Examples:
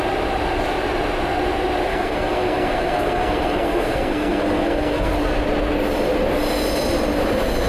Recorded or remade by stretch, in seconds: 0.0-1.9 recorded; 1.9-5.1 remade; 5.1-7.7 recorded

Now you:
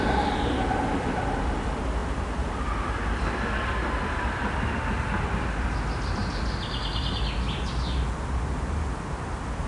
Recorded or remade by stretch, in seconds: 0.0-9.7 recorded

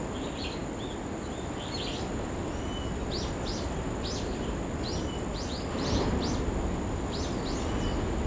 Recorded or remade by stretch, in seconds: 0.0-8.3 recorded